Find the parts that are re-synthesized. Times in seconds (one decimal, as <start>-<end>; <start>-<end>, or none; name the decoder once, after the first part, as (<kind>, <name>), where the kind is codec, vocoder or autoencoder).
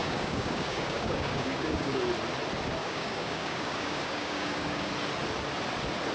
0.0-2.0 (codec, DAC); 2.8-4.9